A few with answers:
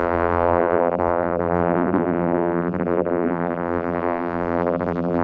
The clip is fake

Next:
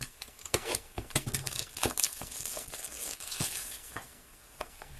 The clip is fake